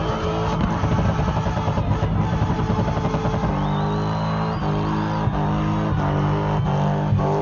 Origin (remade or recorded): recorded